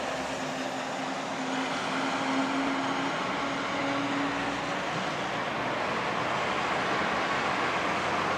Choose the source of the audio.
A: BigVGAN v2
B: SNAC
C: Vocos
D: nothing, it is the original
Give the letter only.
D